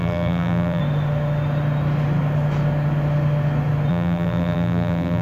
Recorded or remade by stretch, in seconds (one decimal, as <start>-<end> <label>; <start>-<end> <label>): 0.0-0.8 remade; 0.8-3.9 recorded; 3.9-5.2 remade